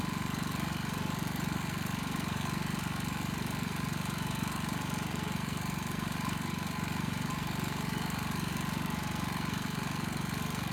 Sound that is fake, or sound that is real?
fake